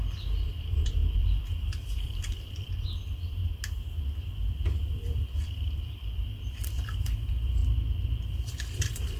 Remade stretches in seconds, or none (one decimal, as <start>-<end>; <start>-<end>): 0.0-3.4; 4.8-7.6; 8.3-9.2